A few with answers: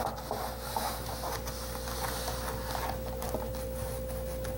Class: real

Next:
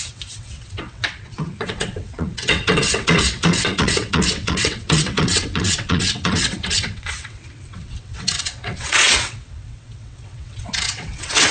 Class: fake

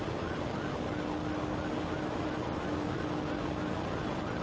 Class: real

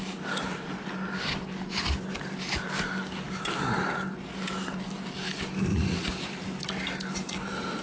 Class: real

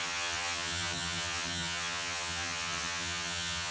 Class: fake